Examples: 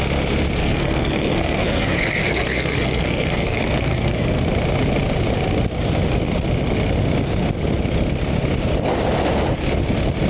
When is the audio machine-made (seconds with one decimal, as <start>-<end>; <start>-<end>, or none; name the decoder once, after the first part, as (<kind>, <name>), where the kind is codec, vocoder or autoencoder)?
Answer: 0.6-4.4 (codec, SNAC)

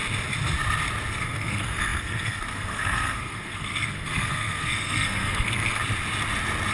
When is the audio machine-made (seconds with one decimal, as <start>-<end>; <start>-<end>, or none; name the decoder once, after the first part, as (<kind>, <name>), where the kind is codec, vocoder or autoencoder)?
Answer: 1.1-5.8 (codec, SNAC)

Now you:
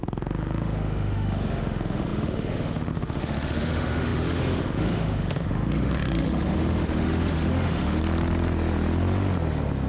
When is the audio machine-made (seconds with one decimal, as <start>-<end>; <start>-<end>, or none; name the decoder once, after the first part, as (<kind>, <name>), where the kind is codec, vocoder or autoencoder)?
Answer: 0.0-8.0 (autoencoder, DAC-VAE)

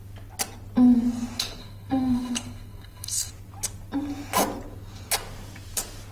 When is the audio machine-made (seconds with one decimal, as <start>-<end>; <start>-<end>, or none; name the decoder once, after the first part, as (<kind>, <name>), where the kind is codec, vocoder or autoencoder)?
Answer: 1.6-3.3 (codec, SNAC)

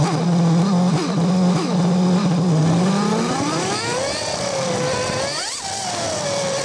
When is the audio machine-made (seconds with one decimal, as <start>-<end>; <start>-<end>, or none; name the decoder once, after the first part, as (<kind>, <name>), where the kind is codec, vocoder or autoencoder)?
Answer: none

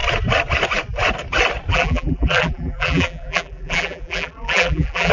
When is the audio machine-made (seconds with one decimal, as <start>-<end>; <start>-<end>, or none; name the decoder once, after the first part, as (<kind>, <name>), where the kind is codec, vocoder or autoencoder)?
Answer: 1.7-5.1 (vocoder, BigVGAN v2)